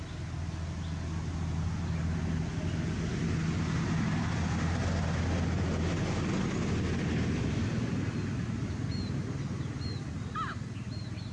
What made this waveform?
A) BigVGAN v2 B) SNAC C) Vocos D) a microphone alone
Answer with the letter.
D